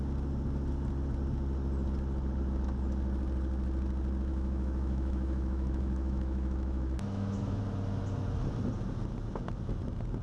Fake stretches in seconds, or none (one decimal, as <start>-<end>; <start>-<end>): 4.3-7.6